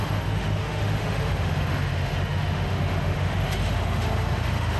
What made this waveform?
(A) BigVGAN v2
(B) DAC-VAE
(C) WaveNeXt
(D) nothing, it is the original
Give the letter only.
B